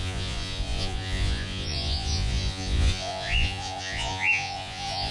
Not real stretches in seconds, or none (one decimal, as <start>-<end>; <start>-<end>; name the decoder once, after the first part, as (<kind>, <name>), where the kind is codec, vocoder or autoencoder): 0.0-5.1 (vocoder, Vocos)